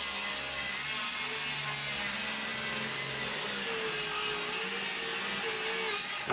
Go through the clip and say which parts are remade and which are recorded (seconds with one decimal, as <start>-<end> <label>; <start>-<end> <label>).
0.0-6.3 recorded